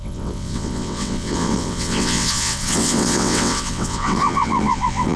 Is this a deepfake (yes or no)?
yes